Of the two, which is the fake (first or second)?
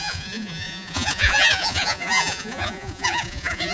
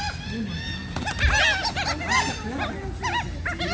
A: first